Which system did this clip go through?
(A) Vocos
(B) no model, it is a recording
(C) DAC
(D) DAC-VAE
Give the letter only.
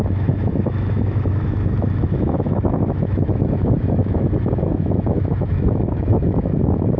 D